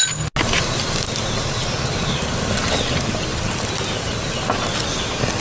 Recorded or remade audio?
recorded